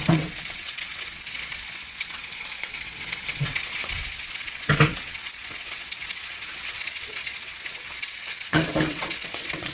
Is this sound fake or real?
fake